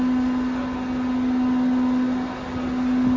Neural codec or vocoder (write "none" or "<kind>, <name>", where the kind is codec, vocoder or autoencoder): none